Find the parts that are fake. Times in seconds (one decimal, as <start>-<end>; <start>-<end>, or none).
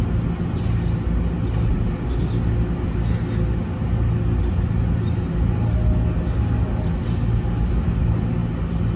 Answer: none